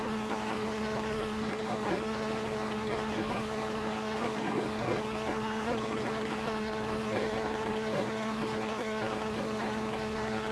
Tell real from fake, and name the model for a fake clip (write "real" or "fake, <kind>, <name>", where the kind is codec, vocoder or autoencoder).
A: fake, codec, SNAC